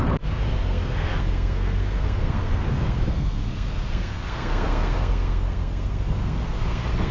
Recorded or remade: remade